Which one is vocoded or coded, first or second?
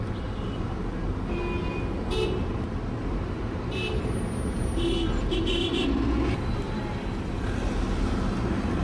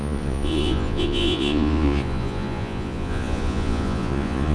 second